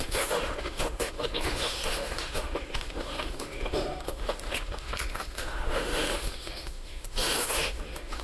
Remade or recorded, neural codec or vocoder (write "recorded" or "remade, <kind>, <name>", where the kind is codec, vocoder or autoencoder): remade, autoencoder, DAC-VAE